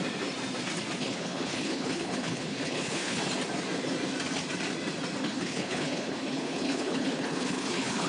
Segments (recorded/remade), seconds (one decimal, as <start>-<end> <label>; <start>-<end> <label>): 0.0-1.0 recorded; 1.0-3.2 remade; 3.2-5.2 recorded; 5.2-8.1 remade